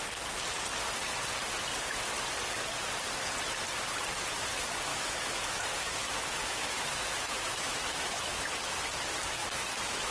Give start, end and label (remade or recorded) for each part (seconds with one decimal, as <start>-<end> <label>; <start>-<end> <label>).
0.0-4.9 recorded; 4.9-8.4 remade; 8.4-9.4 recorded; 9.4-10.1 remade